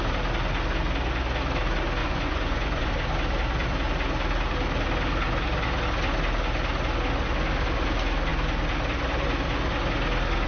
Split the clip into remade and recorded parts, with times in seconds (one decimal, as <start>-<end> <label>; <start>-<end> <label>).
0.0-2.0 recorded; 2.0-2.9 remade; 2.9-10.5 recorded